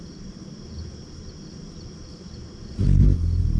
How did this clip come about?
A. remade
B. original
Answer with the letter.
B